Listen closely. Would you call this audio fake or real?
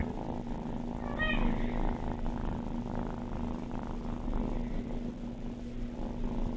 real